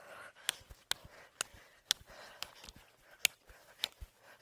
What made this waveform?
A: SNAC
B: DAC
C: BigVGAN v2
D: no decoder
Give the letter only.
D